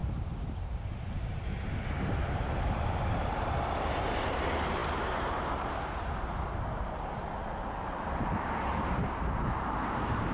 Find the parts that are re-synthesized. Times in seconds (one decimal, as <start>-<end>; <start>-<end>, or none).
0.0-7.4; 8.8-10.3